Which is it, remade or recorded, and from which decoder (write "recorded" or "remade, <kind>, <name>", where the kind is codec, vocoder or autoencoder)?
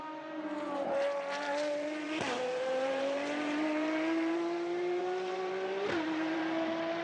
remade, vocoder, BigVGAN v2